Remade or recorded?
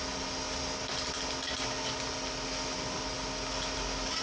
recorded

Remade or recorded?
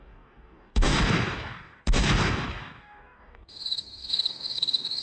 remade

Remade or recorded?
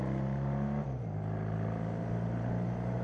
recorded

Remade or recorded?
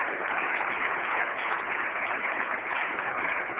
remade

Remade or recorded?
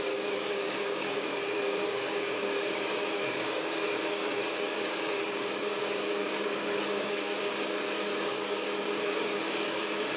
remade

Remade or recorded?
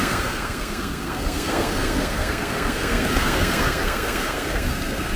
remade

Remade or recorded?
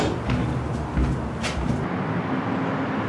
recorded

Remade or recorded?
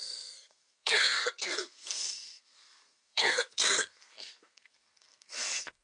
remade